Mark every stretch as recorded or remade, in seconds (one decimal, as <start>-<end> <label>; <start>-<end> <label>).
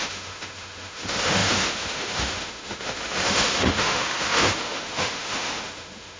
0.0-6.2 remade